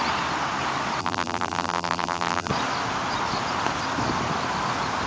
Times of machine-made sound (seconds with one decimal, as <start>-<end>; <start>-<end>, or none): 1.0-2.5